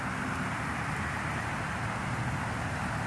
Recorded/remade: recorded